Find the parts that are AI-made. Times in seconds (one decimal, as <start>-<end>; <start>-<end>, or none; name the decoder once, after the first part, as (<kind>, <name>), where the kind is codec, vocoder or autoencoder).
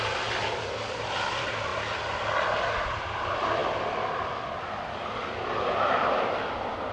0.0-1.7 (vocoder, BigVGAN v2); 3.0-6.9